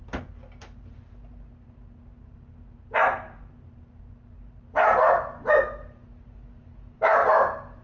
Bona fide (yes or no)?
yes